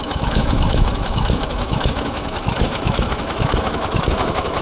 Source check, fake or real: fake